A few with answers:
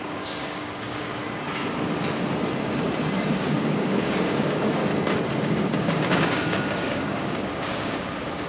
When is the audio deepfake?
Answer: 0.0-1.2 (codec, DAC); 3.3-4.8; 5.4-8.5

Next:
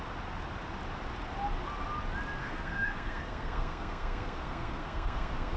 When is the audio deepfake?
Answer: 2.4-5.6 (codec, SNAC)

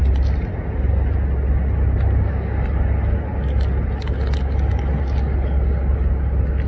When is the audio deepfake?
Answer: none

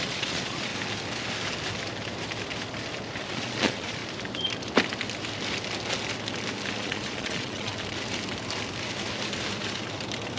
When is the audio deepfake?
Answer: 0.0-0.7 (vocoder, Vocos); 3.3-4.0; 6.7-7.7